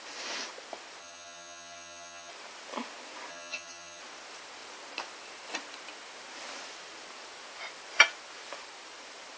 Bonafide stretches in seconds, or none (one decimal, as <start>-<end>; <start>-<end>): 0.0-1.0; 2.3-3.3; 4.0-9.4